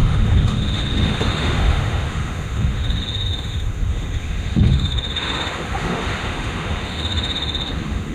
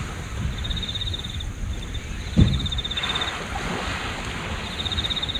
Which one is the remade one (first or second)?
first